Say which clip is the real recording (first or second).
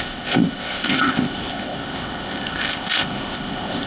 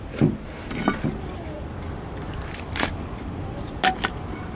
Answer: second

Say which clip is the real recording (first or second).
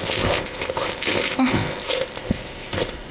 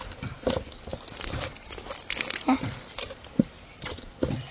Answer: second